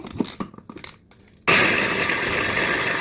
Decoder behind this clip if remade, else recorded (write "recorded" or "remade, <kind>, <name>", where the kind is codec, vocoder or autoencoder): recorded